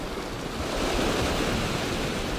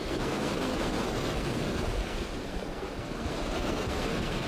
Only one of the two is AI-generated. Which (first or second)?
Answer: second